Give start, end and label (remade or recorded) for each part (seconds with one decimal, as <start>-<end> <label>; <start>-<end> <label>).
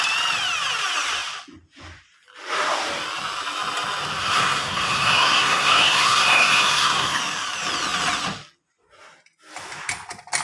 0.0-4.2 recorded; 4.2-7.2 remade; 7.2-10.4 recorded